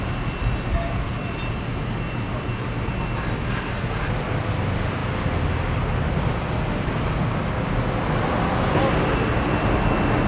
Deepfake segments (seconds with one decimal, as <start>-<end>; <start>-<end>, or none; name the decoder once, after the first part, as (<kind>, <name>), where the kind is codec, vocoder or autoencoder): none

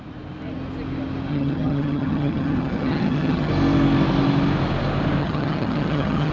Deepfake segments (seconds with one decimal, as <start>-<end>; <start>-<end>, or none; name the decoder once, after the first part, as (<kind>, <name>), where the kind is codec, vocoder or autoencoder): 1.3-3.5 (vocoder, HiFi-GAN); 5.2-6.3